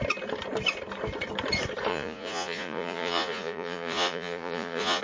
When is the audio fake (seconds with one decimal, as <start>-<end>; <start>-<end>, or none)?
1.9-5.0